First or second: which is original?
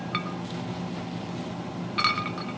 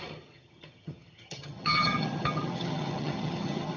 first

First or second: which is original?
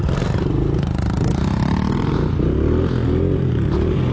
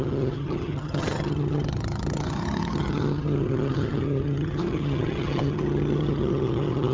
first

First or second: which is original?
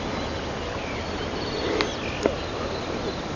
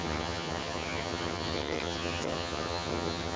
first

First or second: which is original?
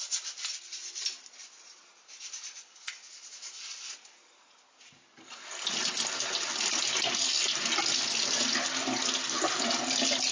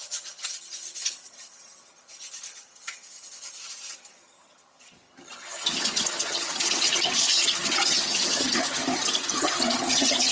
first